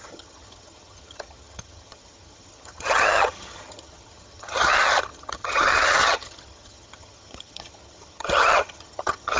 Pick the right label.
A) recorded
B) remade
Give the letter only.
B